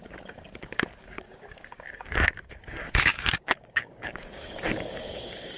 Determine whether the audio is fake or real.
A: fake